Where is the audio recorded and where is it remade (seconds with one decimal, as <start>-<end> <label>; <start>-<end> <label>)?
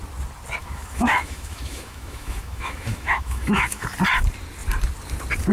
0.0-0.6 recorded; 0.6-3.9 remade; 3.9-5.5 recorded